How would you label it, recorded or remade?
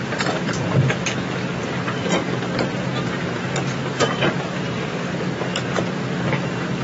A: recorded